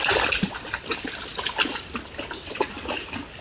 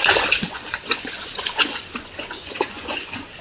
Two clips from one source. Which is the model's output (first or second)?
second